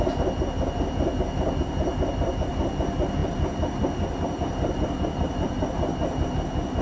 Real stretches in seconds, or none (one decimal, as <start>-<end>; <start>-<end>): 0.0-1.9; 2.5-3.2; 6.3-6.8